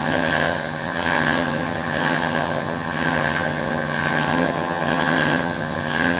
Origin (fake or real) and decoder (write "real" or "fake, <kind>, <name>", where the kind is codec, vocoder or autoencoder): fake, vocoder, HiFi-GAN